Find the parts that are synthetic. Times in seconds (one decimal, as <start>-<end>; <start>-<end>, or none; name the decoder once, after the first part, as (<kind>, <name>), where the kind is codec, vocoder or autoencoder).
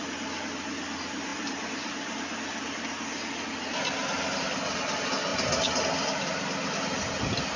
none